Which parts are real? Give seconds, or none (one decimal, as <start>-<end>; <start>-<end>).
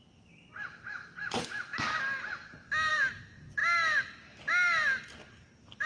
1.7-2.9; 3.6-5.9